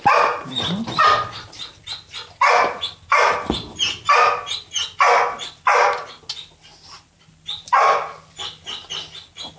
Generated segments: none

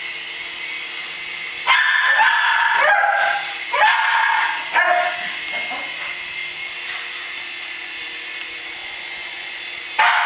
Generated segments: 8.8-9.6 (vocoder, Vocos)

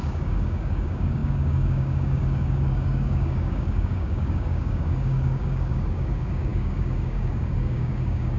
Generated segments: 0.0-8.4 (codec, DAC)

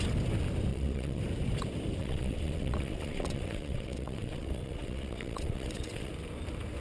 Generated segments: 0.7-1.2 (vocoder, WaveNeXt); 2.0-6.1

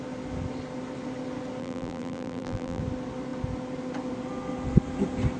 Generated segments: 1.6-2.8 (vocoder, BigVGAN v2)

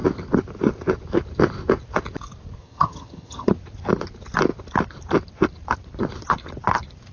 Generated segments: 2.6-3.5 (vocoder, HiFi-GAN)